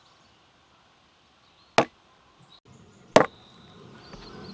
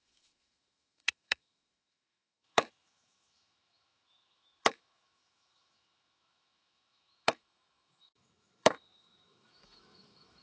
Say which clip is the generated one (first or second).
second